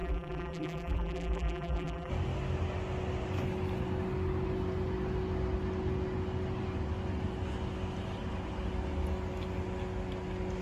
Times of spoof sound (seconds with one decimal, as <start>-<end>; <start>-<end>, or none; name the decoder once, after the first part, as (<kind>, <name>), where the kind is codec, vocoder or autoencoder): 0.0-2.1 (vocoder, BigVGAN v2)